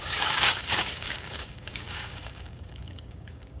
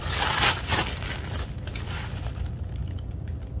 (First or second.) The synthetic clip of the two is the first